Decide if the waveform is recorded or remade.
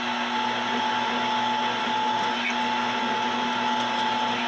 recorded